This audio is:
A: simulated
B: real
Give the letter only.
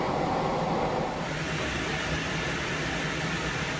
B